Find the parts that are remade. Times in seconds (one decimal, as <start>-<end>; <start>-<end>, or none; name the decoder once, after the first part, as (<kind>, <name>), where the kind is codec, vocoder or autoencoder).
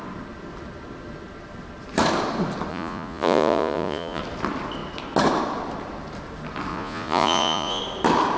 2.7-4.2 (vocoder, Vocos); 6.7-7.8